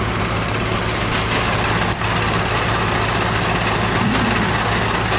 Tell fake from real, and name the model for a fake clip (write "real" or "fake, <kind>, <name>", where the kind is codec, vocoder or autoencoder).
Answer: real